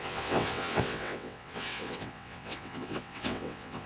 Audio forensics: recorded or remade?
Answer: remade